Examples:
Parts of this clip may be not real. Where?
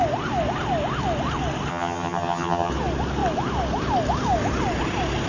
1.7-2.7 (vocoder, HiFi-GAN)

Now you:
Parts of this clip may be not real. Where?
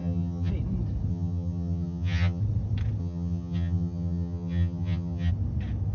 0.0-0.5 (vocoder, HiFi-GAN); 1.1-2.4; 3.0-5.3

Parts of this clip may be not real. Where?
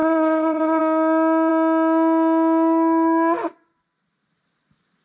0.0-0.8 (vocoder, HiFi-GAN)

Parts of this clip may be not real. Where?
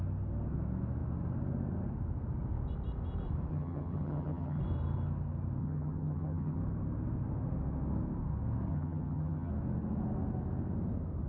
3.5-4.6 (vocoder, HiFi-GAN); 5.6-6.6; 8.7-9.5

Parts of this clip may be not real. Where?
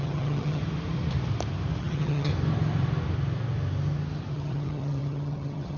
0.0-0.6 (vocoder, HiFi-GAN); 1.8-2.3; 4.3-5.8